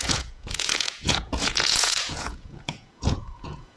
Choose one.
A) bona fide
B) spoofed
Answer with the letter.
B